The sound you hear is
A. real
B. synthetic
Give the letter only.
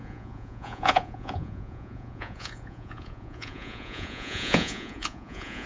B